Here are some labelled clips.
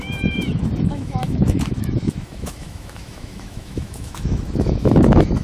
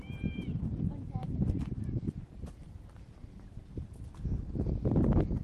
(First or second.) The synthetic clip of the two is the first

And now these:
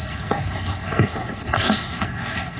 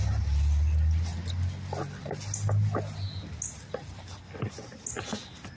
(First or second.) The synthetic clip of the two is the first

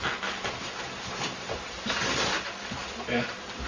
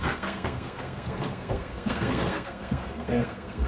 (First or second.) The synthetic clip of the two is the second